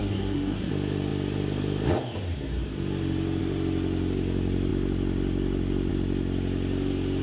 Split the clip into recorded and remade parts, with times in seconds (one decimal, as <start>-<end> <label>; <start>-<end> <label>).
0.0-0.7 remade; 0.7-7.2 recorded